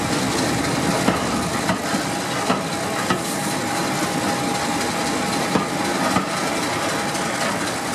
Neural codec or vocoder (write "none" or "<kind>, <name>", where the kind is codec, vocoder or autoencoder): none